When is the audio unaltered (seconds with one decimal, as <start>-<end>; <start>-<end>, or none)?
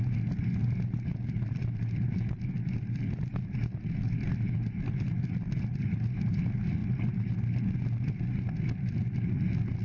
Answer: 0.0-9.8